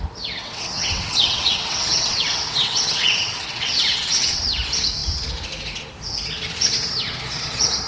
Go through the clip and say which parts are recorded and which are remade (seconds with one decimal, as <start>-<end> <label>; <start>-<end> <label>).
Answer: 0.0-0.4 recorded; 0.4-4.4 remade; 4.4-7.9 recorded